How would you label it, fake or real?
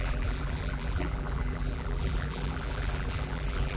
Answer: fake